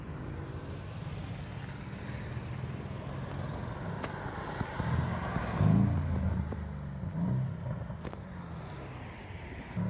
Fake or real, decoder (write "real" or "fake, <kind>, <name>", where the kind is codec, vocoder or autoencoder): real